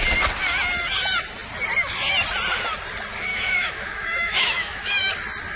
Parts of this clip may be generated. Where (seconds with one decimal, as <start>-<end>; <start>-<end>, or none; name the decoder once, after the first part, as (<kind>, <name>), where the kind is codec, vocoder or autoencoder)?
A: 3.3-5.1 (autoencoder, DAC-VAE)